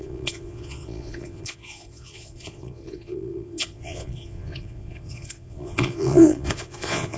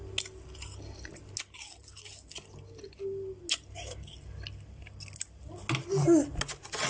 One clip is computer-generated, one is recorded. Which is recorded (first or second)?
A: second